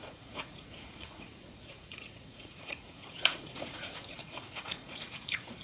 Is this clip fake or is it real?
fake